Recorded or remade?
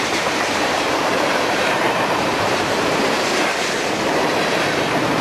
remade